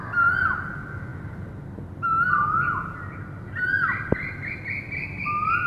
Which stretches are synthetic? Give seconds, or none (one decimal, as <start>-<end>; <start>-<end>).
none